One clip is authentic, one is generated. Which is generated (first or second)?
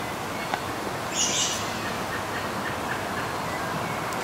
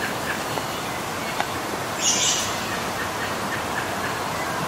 second